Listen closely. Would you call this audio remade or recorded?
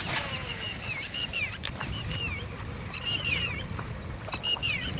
remade